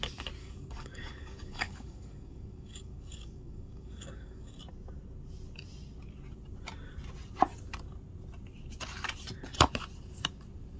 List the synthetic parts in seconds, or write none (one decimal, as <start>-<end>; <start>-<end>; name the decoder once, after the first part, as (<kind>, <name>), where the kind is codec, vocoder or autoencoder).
0.4-4.6 (codec, DAC)